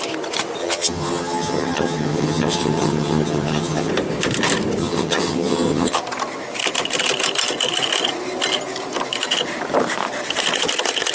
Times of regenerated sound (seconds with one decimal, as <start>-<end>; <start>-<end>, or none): 0.6-3.9; 4.8-6.0